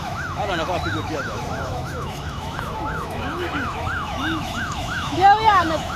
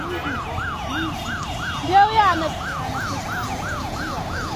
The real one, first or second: second